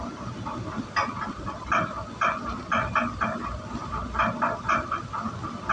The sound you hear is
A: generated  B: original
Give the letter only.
B